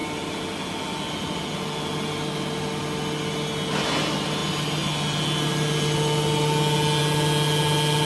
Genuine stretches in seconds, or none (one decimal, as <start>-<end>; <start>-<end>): 0.0-8.1